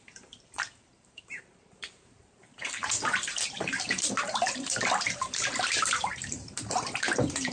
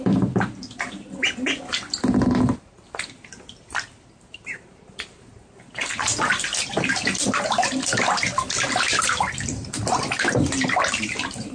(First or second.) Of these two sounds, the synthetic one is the first